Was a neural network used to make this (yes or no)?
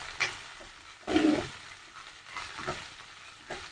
no